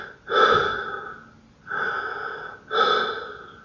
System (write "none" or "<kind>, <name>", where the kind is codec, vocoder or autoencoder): none